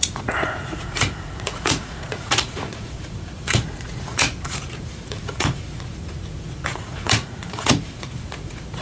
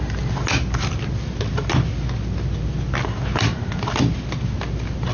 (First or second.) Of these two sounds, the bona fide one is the second